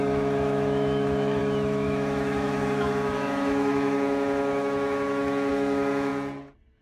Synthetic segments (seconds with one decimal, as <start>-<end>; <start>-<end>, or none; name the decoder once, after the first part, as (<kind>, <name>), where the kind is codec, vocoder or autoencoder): 0.0-6.1 (autoencoder, DAC-VAE)